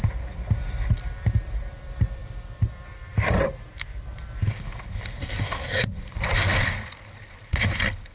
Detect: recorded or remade remade